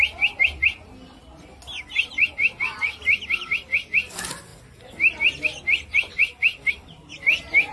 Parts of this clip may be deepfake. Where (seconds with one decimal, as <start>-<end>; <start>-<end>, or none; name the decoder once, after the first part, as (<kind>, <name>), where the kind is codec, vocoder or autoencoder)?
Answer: none